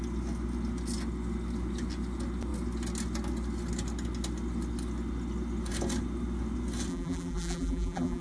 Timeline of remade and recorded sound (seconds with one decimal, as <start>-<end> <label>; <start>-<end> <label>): 0.0-6.9 recorded; 6.9-8.2 remade